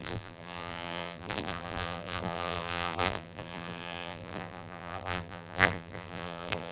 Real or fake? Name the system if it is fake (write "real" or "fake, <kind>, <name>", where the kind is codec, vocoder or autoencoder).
fake, vocoder, BigVGAN v2